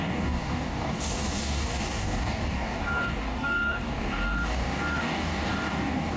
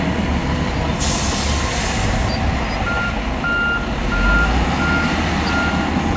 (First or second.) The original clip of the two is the second